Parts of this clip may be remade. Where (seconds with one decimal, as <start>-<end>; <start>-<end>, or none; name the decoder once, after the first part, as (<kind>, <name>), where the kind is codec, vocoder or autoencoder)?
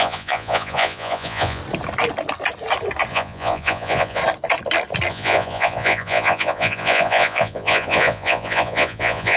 0.0-1.6 (vocoder, Vocos); 3.1-4.2; 5.1-9.4